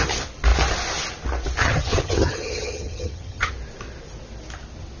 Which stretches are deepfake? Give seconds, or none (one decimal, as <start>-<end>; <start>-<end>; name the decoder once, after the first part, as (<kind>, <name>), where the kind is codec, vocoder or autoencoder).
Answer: 1.6-3.5 (vocoder, HiFi-GAN)